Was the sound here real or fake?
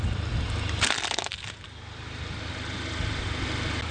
real